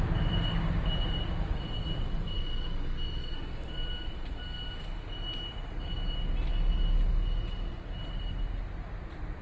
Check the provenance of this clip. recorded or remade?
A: recorded